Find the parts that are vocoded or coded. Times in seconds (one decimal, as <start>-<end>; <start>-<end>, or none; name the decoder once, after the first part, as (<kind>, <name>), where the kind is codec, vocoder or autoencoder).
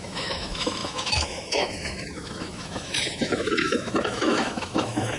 0.0-5.2 (autoencoder, DAC-VAE)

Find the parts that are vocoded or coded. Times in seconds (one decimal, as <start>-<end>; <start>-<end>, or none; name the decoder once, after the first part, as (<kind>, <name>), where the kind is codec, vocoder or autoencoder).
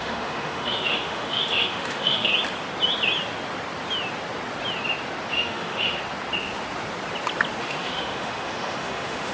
0.0-2.3 (autoencoder, DAC-VAE); 5.3-6.0; 7.6-9.3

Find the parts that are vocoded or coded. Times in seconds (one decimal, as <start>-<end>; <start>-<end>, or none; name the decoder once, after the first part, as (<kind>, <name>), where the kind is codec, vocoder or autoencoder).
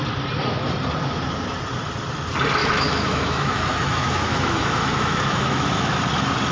2.6-6.0 (autoencoder, DAC-VAE)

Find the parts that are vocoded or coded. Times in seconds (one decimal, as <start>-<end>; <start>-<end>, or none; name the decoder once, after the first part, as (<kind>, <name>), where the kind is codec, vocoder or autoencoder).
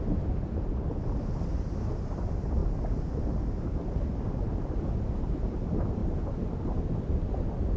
none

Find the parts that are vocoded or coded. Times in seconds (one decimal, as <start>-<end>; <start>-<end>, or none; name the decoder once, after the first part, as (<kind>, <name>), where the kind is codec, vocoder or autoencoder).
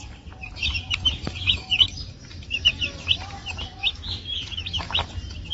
3.8-5.0 (autoencoder, DAC-VAE)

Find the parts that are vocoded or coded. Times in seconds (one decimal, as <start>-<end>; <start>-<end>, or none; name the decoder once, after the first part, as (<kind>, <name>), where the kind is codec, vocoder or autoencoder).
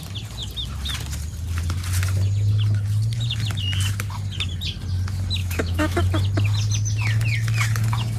5.4-6.0 (autoencoder, DAC-VAE)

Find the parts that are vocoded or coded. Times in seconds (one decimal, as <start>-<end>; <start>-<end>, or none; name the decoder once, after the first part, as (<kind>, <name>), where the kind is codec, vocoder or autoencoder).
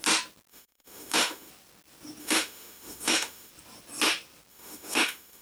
0.5-1.5 (autoencoder, DAC-VAE); 2.2-3.5; 4.5-5.4